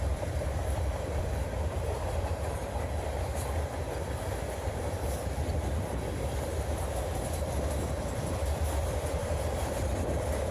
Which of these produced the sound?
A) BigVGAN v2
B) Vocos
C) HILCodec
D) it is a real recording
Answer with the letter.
A